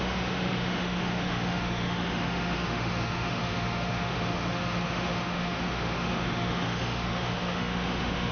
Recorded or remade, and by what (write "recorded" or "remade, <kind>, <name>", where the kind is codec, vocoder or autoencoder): remade, autoencoder, DAC-VAE